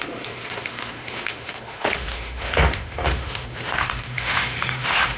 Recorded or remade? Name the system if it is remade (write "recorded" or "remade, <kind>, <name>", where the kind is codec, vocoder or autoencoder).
remade, autoencoder, DAC-VAE